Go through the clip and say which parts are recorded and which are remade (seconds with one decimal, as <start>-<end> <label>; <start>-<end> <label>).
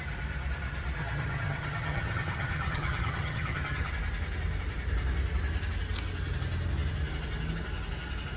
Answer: 0.0-1.0 recorded; 1.0-3.9 remade; 3.9-8.4 recorded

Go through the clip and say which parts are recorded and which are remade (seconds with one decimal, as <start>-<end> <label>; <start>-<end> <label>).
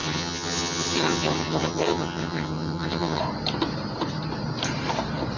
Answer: 0.0-3.2 remade; 3.2-5.4 recorded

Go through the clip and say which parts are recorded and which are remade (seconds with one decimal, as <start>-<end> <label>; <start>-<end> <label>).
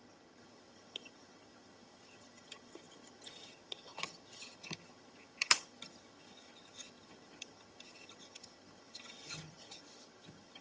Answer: 0.0-10.6 remade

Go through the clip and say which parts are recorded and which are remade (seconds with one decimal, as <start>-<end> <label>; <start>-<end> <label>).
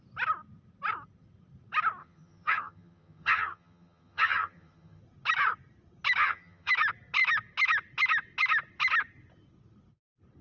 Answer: 0.0-2.0 recorded; 2.0-5.0 remade; 5.0-6.2 recorded; 6.2-6.7 remade; 6.7-10.4 recorded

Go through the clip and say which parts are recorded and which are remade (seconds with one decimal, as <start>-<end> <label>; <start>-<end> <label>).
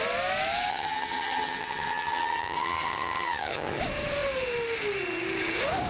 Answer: 0.0-0.7 recorded; 0.7-3.8 remade; 3.8-5.9 recorded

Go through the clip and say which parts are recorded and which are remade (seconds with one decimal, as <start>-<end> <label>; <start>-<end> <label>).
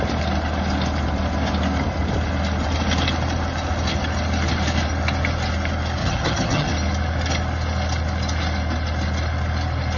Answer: 0.0-6.0 recorded; 6.0-6.7 remade; 6.7-10.0 recorded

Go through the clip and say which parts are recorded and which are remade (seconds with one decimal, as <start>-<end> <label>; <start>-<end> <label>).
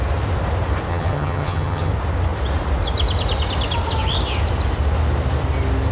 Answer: 0.0-0.9 recorded; 0.9-1.9 remade; 1.9-5.9 recorded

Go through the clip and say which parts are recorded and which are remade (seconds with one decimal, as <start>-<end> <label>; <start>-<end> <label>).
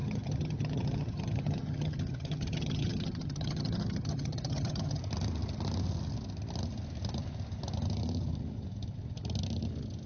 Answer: 0.0-5.0 remade; 5.0-10.1 recorded